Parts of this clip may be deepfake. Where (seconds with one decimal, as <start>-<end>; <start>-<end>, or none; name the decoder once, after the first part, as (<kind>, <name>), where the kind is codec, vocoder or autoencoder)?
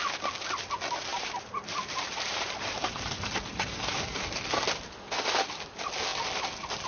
1.1-4.4 (vocoder, BigVGAN v2)